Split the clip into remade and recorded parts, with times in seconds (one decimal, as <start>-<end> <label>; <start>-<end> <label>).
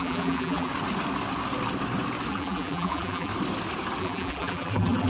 0.0-0.7 remade; 0.7-2.3 recorded; 2.3-3.3 remade; 3.3-4.0 recorded; 4.0-5.1 remade